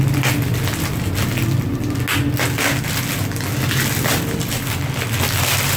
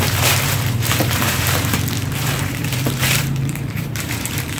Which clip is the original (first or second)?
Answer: first